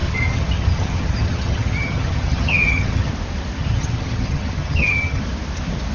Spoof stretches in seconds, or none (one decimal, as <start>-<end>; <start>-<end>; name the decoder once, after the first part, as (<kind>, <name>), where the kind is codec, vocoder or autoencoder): 0.0-3.1 (vocoder, HiFi-GAN); 3.6-5.2